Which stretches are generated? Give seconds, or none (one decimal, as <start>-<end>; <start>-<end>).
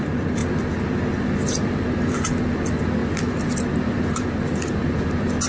none